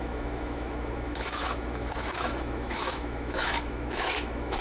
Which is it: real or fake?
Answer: fake